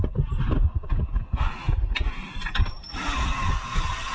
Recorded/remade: recorded